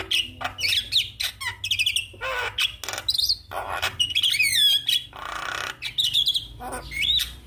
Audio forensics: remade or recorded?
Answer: recorded